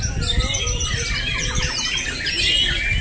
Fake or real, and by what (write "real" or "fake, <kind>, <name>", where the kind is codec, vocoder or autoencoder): real